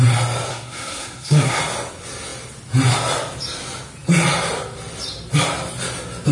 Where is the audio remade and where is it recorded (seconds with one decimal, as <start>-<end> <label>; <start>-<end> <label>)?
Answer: 0.0-0.5 recorded; 0.5-1.6 remade; 1.6-6.3 recorded